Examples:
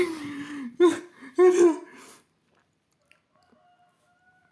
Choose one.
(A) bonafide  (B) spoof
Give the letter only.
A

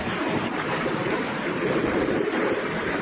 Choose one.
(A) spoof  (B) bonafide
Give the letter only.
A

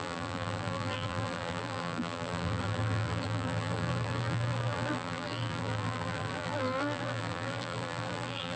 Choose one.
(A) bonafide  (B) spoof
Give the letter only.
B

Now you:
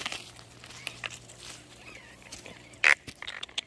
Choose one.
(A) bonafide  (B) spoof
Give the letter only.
B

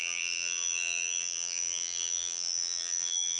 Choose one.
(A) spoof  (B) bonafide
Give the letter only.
A